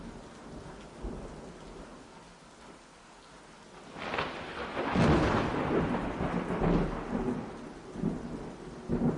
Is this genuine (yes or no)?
yes